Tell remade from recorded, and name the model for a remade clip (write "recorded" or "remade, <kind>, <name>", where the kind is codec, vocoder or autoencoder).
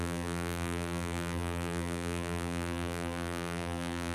remade, vocoder, BigVGAN v2